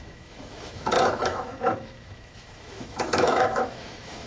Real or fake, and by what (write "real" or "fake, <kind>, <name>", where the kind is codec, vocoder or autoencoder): fake, autoencoder, DAC-VAE